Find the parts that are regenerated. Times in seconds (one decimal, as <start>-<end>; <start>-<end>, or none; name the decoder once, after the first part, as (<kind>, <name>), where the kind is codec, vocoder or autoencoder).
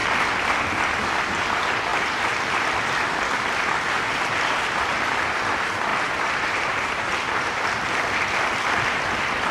5.9-7.6 (vocoder, BigVGAN v2)